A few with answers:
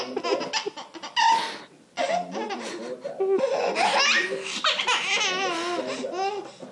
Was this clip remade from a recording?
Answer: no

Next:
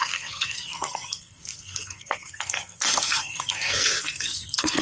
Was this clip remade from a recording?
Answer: yes